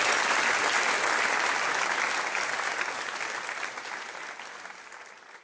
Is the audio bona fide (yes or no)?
yes